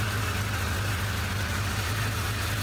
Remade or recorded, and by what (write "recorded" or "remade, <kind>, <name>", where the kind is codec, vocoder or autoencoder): recorded